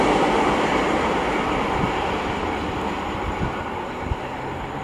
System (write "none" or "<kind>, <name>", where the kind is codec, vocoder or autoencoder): none